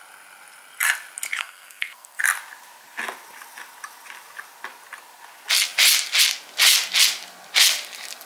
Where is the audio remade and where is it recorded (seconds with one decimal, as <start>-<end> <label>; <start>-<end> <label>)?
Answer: 0.0-1.4 recorded; 1.4-2.2 remade; 2.2-8.3 recorded